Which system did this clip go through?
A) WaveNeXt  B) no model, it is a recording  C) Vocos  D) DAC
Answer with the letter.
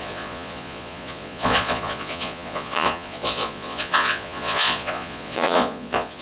C